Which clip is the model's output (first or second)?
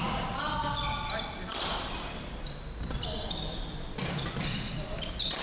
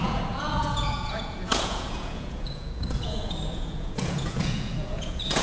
second